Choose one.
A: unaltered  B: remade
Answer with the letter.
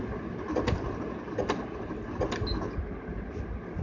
A